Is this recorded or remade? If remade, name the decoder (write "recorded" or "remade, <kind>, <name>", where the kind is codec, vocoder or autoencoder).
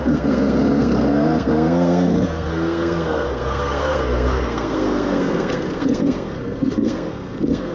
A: remade, codec, SNAC